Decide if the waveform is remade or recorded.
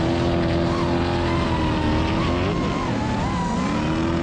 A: recorded